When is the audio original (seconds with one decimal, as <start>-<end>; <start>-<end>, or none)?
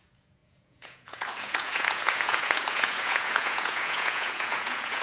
none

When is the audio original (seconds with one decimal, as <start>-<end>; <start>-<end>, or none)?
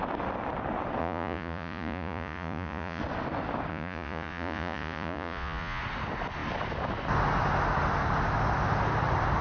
0.0-1.0; 3.0-3.7; 5.8-9.4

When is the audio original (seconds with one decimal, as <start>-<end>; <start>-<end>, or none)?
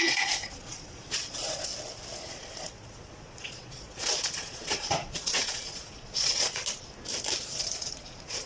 1.7-2.2; 6.6-7.4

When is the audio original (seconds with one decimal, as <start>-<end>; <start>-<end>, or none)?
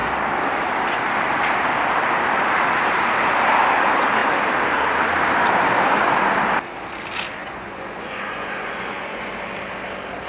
0.0-7.4; 9.3-10.3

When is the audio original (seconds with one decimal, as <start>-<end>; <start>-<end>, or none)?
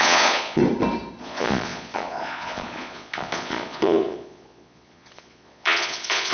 0.6-1.2